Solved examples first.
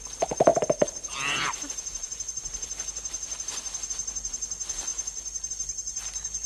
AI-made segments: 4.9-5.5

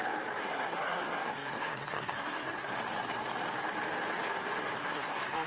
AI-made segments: 0.4-2.7; 4.8-5.5

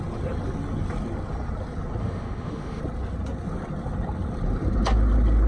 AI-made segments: 2.0-2.8

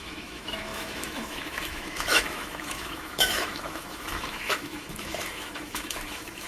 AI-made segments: 0.0-6.5

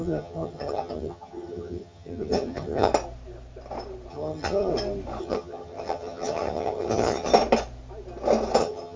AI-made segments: 0.0-2.9; 4.1-4.7; 5.2-7.3; 8.6-9.0